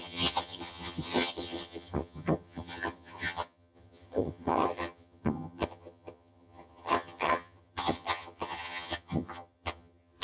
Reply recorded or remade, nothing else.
remade